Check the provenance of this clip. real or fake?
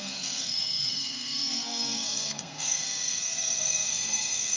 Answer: fake